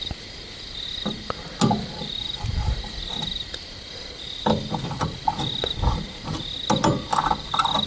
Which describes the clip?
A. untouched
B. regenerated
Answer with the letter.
A